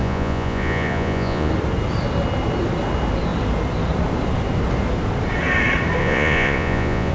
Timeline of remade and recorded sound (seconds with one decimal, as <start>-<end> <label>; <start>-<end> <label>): 0.0-1.5 remade; 1.5-6.0 recorded; 6.0-7.1 remade